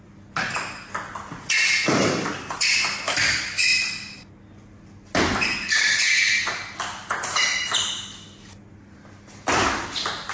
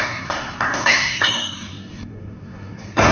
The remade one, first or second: second